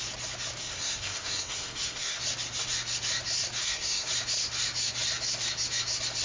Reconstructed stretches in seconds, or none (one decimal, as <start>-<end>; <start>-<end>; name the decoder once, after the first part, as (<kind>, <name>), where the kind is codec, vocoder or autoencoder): 0.6-2.2 (codec, SNAC); 3.6-4.1